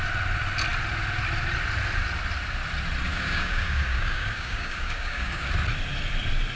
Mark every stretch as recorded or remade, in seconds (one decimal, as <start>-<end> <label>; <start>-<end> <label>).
0.0-3.1 recorded; 3.1-5.5 remade; 5.5-6.6 recorded